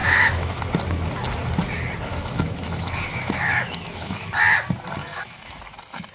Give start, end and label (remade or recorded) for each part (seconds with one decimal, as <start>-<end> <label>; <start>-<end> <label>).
0.0-0.6 remade; 0.6-2.1 recorded; 2.1-4.3 remade; 4.3-5.0 recorded; 5.0-5.6 remade; 5.6-6.1 recorded